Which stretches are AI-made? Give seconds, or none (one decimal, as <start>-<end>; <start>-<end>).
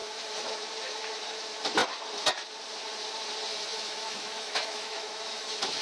0.0-0.5; 3.5-5.8